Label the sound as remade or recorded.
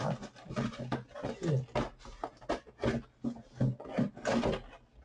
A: recorded